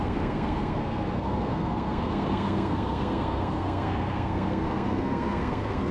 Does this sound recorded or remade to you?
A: remade